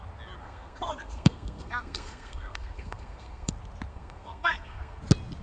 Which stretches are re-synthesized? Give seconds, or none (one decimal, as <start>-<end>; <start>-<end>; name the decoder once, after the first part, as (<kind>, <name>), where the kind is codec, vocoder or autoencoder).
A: 0.4-3.5 (codec, SNAC); 3.9-5.0